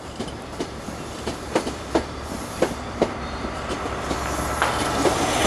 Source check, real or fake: fake